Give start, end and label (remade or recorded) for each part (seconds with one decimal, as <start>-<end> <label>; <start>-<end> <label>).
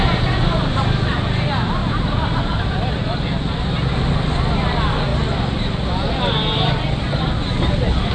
0.0-1.8 recorded; 1.8-3.3 remade; 3.3-8.1 recorded